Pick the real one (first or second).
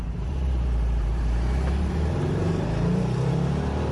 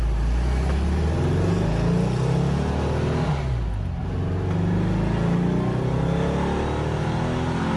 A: second